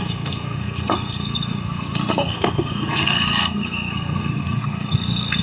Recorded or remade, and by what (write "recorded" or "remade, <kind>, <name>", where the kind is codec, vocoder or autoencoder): remade, codec, SNAC